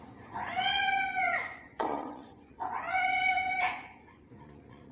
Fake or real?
fake